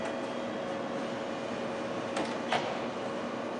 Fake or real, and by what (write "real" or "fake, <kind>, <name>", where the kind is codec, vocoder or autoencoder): real